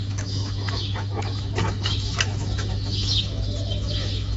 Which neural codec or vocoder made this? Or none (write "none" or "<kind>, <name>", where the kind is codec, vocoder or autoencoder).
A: autoencoder, DAC-VAE